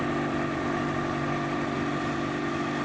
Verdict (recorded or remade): recorded